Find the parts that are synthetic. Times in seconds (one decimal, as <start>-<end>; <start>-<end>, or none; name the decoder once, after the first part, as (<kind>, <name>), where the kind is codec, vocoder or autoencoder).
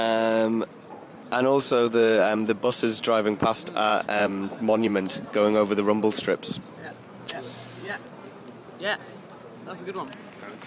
1.2-2.7 (vocoder, Vocos); 3.9-5.1; 6.8-8.3